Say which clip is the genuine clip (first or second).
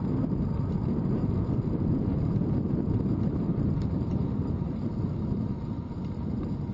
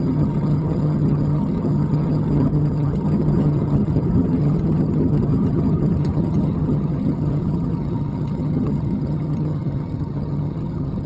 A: first